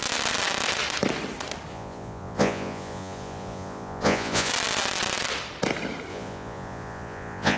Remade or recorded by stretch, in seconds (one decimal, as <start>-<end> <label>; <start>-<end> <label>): 0.0-1.7 recorded; 1.7-4.5 remade; 4.5-6.1 recorded; 6.1-7.6 remade